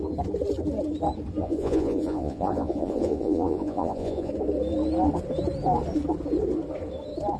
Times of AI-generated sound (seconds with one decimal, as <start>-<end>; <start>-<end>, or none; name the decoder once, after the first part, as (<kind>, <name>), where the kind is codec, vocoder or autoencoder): 1.4-4.3 (vocoder, Vocos)